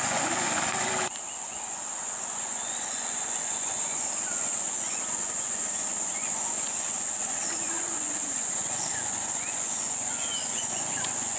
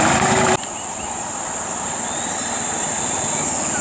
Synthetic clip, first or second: first